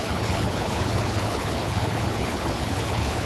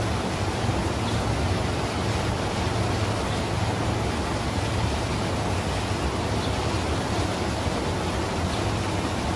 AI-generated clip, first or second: first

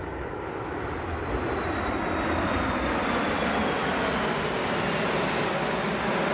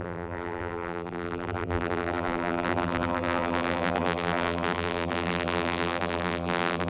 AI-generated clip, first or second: second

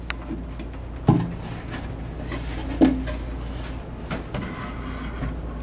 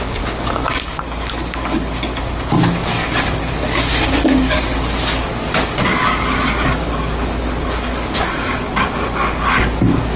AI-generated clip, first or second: second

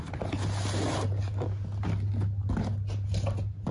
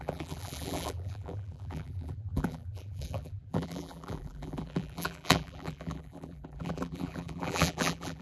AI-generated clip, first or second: second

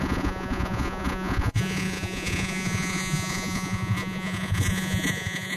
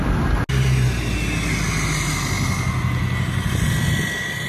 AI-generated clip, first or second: first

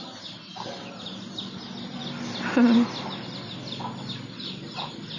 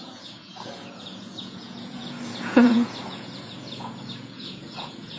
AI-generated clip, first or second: second